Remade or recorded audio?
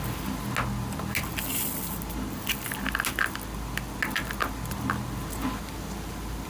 recorded